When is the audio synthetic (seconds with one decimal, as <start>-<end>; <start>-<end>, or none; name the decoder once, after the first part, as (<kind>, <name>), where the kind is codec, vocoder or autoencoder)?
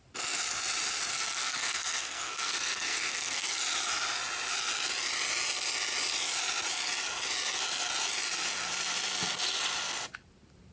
1.1-3.6 (codec, SNAC)